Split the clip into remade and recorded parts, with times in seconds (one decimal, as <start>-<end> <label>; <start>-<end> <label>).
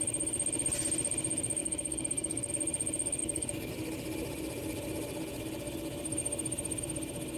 0.0-1.6 recorded; 1.6-2.5 remade; 2.5-3.2 recorded; 3.2-3.7 remade; 3.7-7.4 recorded